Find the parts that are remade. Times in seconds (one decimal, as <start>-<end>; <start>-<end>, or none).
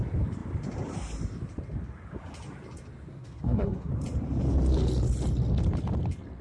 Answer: 3.1-3.9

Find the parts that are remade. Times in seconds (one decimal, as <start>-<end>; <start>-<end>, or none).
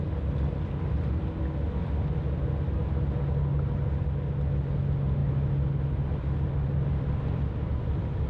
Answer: none